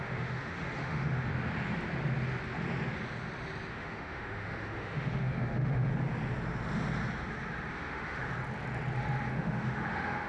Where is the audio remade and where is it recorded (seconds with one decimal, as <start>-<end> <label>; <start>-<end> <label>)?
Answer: 0.0-1.3 remade; 1.3-3.7 recorded; 3.7-5.9 remade; 5.9-7.7 recorded; 7.7-8.3 remade; 8.3-9.3 recorded; 9.3-10.3 remade